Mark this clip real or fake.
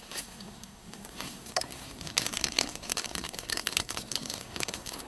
fake